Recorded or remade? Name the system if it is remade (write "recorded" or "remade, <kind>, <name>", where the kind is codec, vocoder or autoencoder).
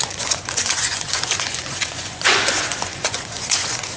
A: remade, vocoder, Vocos